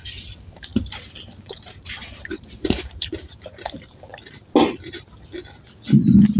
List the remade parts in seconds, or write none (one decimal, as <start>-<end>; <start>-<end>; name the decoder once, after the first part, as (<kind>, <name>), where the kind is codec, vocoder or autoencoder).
0.0-0.7 (vocoder, BigVGAN v2); 1.4-4.1